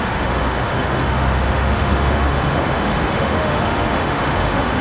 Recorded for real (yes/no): no